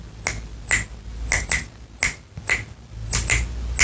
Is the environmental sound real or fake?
real